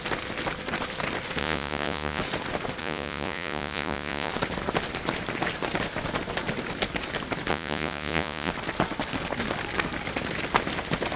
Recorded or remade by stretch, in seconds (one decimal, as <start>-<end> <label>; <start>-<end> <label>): 0.0-1.4 recorded; 1.4-2.2 remade; 2.2-2.8 recorded; 2.8-4.3 remade; 4.3-7.5 recorded; 7.5-8.5 remade; 8.5-11.2 recorded

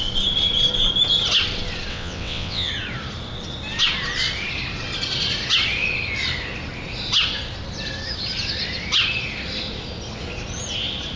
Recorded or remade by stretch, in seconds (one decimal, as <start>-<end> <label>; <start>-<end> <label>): 0.0-1.9 recorded; 1.9-2.7 remade; 2.7-11.2 recorded

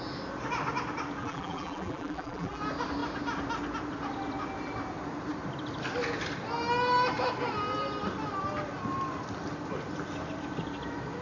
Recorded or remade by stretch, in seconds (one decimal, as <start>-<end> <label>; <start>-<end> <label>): 0.0-1.2 recorded; 1.2-2.6 remade; 2.6-11.2 recorded

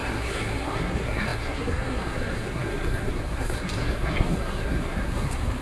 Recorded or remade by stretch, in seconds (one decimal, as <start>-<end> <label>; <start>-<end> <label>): 0.0-5.6 remade

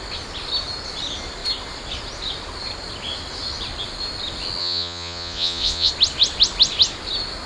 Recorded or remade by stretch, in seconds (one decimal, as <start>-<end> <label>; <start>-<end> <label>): 0.0-4.6 recorded; 4.6-5.9 remade; 5.9-7.5 recorded

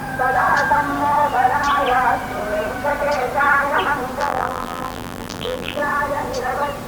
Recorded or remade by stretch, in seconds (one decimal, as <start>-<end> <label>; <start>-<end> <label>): 0.0-4.2 recorded; 4.2-5.8 remade; 5.8-6.9 recorded

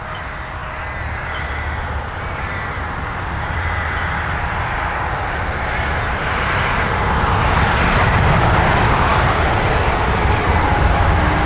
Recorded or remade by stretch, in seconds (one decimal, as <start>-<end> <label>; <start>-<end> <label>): 0.0-11.5 recorded

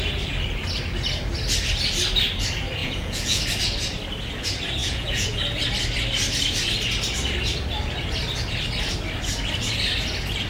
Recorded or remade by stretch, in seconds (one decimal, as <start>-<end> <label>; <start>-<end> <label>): 0.0-2.8 recorded; 2.8-3.4 remade; 3.4-4.8 recorded; 4.8-5.4 remade; 5.4-10.5 recorded